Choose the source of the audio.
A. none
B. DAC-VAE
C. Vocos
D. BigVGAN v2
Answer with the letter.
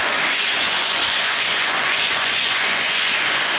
C